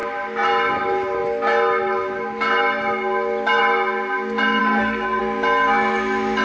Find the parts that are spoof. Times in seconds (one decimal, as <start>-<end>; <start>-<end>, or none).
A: 4.6-5.2